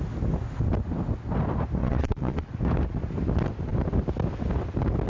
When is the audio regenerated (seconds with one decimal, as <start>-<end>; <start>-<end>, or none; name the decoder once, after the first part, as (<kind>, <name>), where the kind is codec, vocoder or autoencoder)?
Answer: 1.8-2.5 (vocoder, Vocos)